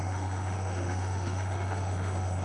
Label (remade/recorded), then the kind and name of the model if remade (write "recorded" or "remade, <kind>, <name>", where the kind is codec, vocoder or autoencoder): remade, autoencoder, DAC-VAE